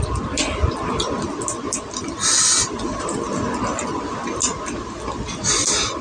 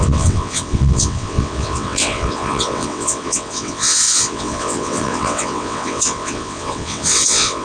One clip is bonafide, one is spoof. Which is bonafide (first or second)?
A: first